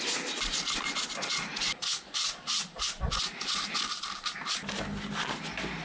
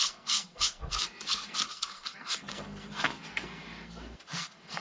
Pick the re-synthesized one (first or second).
second